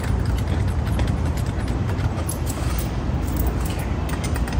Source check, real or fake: real